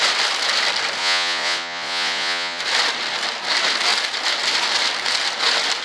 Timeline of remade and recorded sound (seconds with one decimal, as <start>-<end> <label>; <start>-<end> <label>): 0.0-1.0 recorded; 1.0-2.6 remade; 2.6-5.8 recorded